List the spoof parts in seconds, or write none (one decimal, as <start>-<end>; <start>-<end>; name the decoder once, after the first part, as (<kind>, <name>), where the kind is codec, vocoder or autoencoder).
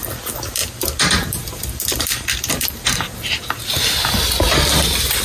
none